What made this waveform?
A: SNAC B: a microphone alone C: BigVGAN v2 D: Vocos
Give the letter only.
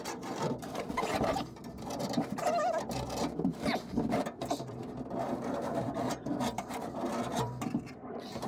C